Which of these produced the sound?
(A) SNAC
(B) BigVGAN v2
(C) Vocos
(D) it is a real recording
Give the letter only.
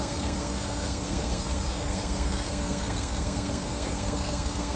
A